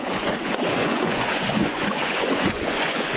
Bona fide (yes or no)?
no